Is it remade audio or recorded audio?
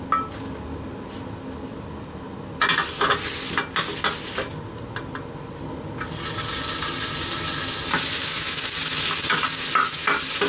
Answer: recorded